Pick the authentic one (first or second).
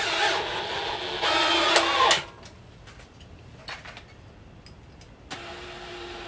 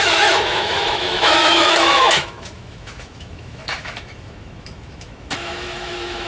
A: first